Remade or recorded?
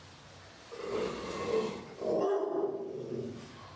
recorded